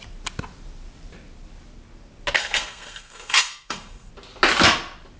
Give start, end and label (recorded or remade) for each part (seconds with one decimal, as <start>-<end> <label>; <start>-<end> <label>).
0.0-2.4 recorded; 2.4-4.1 remade; 4.1-5.2 recorded